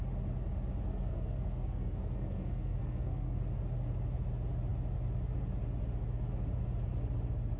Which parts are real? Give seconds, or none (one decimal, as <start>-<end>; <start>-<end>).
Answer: 0.0-0.9; 3.4-7.6